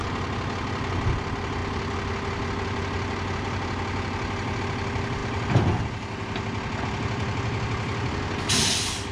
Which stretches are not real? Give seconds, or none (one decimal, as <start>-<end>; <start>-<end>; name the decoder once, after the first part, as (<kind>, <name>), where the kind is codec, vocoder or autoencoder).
none